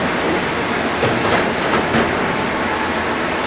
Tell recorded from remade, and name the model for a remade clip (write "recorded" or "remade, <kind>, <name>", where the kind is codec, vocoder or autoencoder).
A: recorded